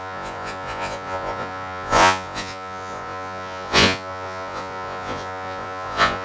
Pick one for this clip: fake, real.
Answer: fake